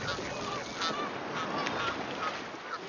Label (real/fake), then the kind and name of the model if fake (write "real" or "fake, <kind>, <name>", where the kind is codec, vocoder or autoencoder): real